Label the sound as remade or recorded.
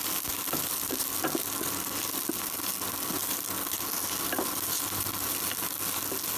recorded